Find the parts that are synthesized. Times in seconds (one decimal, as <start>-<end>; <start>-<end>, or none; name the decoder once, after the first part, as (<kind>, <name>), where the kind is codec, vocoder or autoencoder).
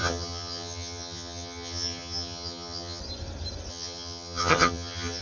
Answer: 0.0-3.0 (vocoder, HiFi-GAN); 3.7-5.2